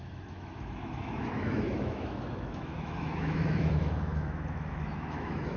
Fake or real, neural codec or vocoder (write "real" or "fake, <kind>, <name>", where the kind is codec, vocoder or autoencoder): fake, autoencoder, DAC-VAE